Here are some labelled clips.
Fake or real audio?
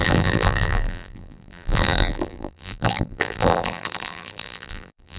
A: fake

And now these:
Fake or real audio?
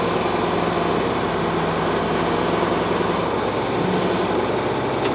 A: real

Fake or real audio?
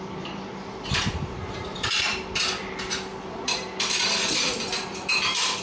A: fake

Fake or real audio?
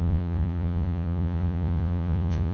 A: fake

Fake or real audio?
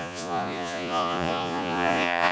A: fake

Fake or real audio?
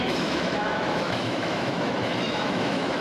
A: fake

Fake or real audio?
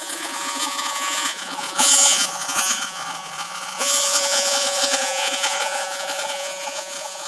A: fake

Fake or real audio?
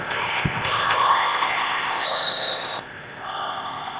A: fake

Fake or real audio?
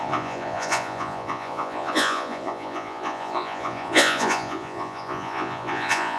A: fake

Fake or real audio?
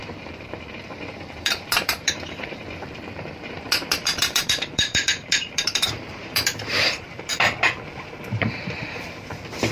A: fake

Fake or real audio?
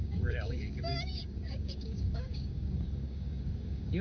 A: fake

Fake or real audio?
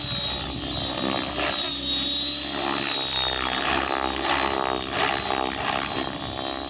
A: real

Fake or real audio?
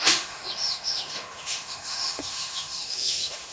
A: fake